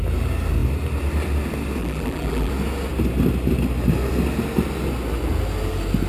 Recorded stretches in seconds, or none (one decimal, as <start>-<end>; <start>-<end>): 0.0-1.8; 2.5-6.1